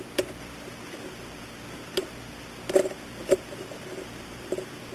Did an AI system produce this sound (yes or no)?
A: no